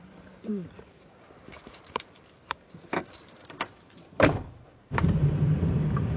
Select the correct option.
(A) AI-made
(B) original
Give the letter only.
A